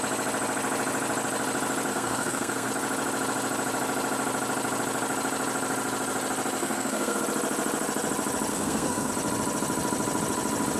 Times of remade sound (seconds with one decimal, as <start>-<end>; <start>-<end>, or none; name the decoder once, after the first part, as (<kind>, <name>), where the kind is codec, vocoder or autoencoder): 1.9-2.7 (codec, SNAC); 6.6-7.2; 8.5-9.1